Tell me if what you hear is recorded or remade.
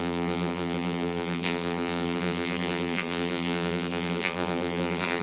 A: remade